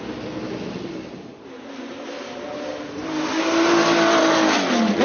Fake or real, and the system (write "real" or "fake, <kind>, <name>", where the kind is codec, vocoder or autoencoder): real